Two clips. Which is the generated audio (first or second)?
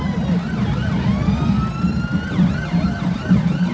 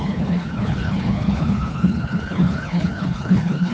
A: second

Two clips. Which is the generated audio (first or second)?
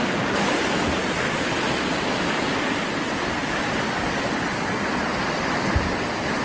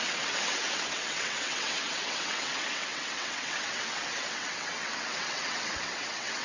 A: second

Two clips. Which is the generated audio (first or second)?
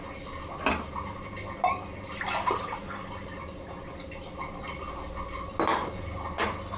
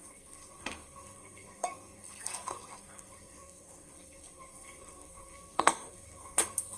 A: second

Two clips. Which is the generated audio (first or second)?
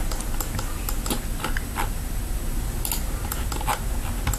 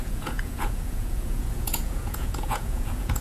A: second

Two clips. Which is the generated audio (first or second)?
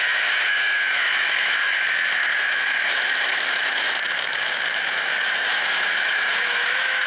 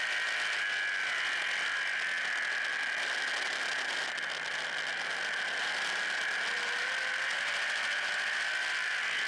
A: first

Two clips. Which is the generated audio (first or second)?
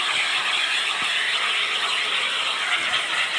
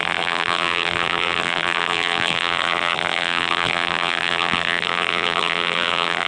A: second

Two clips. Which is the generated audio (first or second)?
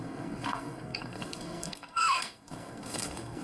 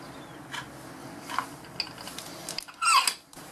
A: first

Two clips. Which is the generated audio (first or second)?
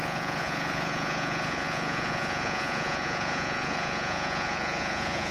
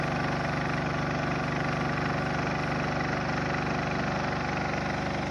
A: first